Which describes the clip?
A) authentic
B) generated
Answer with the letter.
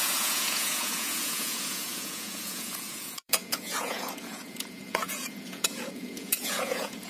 B